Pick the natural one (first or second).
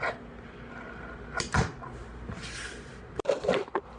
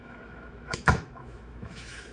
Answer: first